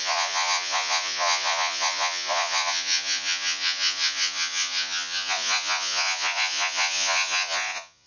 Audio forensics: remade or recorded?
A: remade